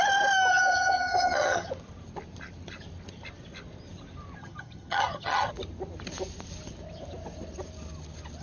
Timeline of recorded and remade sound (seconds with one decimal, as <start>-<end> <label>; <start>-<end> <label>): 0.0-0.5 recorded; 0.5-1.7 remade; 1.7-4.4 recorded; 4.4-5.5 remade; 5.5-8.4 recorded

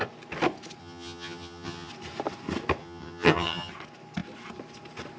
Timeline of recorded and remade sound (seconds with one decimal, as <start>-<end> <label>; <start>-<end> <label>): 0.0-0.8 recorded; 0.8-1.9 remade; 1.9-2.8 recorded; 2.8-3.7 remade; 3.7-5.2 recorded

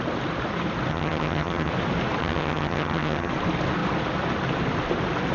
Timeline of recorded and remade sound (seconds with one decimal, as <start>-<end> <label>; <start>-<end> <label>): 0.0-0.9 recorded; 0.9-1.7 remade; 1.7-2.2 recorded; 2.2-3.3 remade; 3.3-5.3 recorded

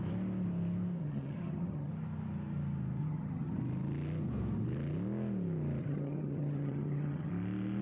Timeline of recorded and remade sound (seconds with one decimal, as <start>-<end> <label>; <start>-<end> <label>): 0.0-1.0 recorded; 1.0-1.9 remade; 1.9-3.0 recorded; 3.0-3.6 remade; 3.6-5.8 recorded; 5.8-7.3 remade; 7.3-7.8 recorded